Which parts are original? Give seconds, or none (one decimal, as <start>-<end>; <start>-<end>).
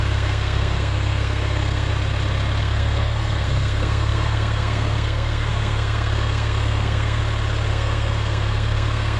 1.9-2.6; 7.2-7.7